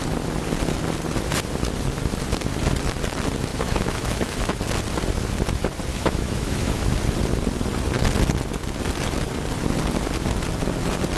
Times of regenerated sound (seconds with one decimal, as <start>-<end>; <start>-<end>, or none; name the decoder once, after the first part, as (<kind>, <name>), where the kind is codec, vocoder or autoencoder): 3.5-4.6 (autoencoder, DAC-VAE); 5.9-6.9

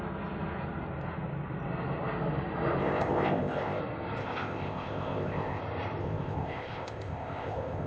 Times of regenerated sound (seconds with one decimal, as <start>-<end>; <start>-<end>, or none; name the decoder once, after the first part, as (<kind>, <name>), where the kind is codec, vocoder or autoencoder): 2.8-3.8 (codec, ZipCodec); 4.2-5.6; 6.0-7.9

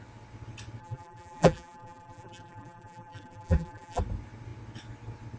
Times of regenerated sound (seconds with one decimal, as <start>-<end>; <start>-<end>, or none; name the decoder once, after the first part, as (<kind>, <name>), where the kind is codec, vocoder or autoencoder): 0.8-4.0 (vocoder, BigVGAN v2)

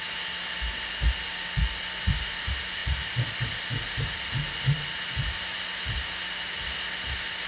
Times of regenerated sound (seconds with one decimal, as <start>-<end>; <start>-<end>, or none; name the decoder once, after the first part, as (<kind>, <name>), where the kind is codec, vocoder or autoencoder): none

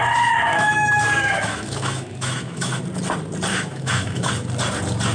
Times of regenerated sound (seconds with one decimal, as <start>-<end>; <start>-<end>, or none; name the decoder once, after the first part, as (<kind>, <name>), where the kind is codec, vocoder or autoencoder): 0.5-2.8 (autoencoder, DAC-VAE); 3.5-4.3

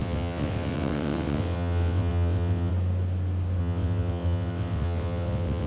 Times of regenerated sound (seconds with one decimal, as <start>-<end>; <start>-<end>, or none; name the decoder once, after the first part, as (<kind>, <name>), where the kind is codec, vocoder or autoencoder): 0.0-2.7 (vocoder, WaveNeXt); 3.6-5.7

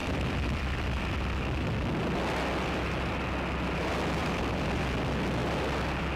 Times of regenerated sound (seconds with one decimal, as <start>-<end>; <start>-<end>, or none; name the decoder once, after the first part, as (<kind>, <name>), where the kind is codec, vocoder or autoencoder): 0.0-1.0 (vocoder, BigVGAN v2); 4.2-4.8

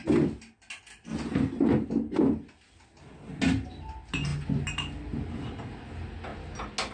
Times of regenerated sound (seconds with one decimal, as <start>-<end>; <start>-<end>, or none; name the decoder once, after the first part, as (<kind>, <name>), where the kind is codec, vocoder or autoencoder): none